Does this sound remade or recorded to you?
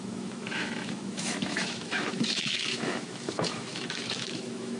remade